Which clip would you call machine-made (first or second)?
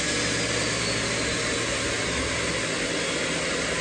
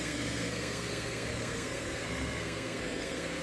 second